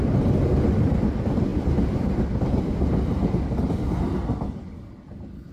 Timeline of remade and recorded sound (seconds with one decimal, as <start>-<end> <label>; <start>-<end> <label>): 0.0-5.5 recorded